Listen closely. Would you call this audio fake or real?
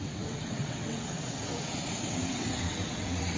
fake